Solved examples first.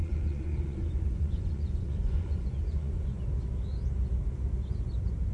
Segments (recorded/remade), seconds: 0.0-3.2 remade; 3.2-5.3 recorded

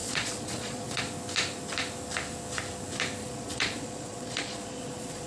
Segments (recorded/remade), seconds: 0.0-1.0 remade; 1.0-3.2 recorded; 3.2-5.3 remade

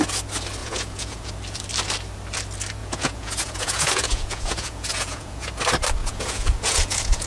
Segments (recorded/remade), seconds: 0.0-0.6 recorded; 0.6-1.3 remade; 1.3-2.8 recorded; 2.8-5.5 remade; 5.5-6.0 recorded; 6.0-7.3 remade